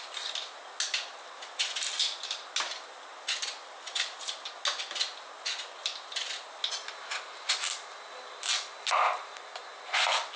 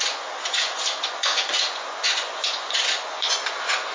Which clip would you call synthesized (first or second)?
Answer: second